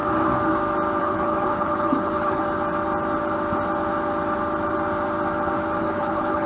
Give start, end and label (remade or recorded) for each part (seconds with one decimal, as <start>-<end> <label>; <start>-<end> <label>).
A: 0.0-1.0 recorded; 1.0-2.4 remade; 2.4-5.8 recorded; 5.8-6.5 remade